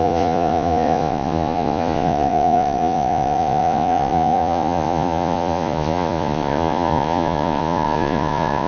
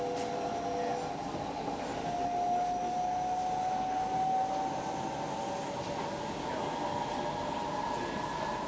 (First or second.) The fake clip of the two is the first